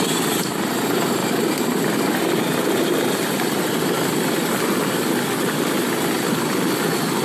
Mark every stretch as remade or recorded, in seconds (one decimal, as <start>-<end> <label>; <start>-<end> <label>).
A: 0.0-7.2 recorded